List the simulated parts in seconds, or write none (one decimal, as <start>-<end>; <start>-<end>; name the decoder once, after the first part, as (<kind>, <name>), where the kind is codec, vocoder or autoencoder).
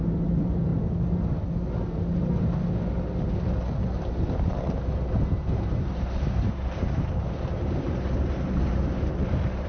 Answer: 0.0-0.7 (vocoder, BigVGAN v2); 5.2-9.7